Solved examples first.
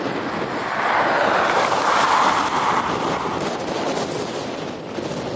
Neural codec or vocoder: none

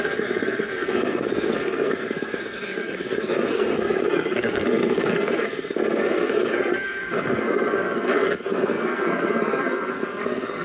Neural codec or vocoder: codec, SNAC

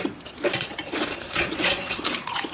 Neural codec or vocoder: vocoder, Vocos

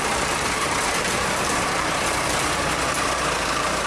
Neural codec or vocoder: vocoder, BigVGAN v2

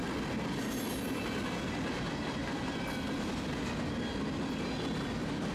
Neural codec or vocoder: none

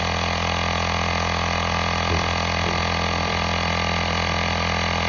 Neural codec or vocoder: none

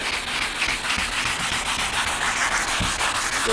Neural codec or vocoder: none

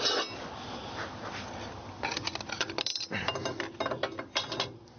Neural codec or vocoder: none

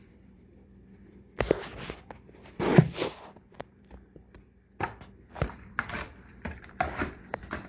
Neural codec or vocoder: vocoder, BigVGAN v2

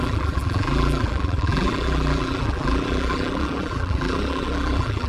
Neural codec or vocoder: vocoder, BigVGAN v2